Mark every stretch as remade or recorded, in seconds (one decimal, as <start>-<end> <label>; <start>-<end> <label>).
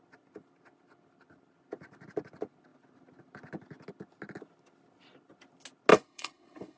0.0-5.9 recorded; 5.9-6.8 remade